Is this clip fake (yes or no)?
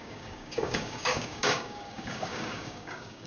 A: yes